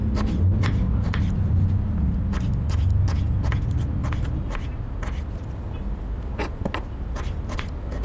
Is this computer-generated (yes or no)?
no